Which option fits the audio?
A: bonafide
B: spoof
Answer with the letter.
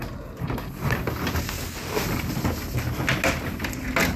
A